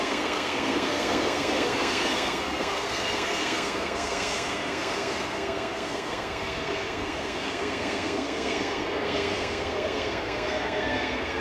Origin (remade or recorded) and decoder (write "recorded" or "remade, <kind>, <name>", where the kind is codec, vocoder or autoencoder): remade, codec, SNAC